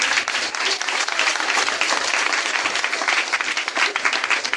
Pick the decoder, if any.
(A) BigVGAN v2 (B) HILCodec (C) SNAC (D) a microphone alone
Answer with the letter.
D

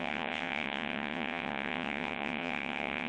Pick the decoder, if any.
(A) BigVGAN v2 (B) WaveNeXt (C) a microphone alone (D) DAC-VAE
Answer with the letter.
B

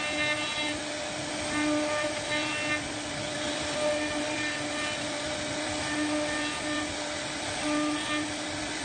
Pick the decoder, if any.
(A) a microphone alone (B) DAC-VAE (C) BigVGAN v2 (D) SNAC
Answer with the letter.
A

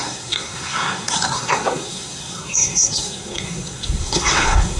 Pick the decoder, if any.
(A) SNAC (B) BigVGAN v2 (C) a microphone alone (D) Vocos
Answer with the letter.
A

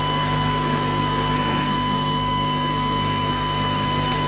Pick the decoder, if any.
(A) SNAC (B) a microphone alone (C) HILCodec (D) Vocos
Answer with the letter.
A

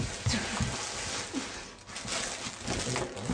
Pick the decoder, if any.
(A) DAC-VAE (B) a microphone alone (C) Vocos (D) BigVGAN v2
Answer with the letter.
B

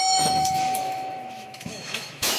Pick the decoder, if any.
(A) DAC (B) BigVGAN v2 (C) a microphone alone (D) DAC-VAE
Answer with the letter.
D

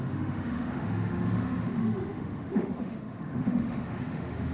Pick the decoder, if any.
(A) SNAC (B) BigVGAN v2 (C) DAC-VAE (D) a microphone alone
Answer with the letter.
C